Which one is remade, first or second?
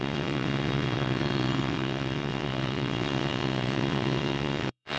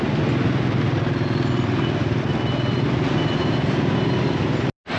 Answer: first